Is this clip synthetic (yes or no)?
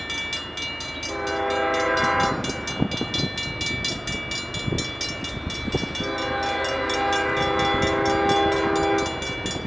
no